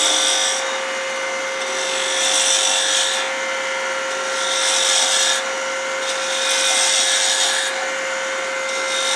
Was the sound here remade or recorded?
recorded